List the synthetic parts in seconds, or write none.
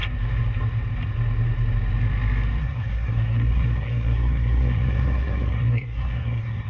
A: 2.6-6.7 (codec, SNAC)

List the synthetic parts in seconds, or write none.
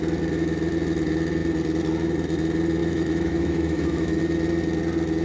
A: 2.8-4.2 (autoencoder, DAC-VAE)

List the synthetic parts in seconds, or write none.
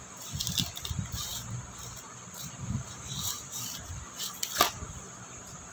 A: 1.3-4.2 (vocoder, BigVGAN v2)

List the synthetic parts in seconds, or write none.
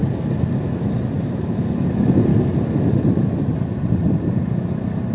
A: 1.7-2.3 (autoencoder, DAC-VAE)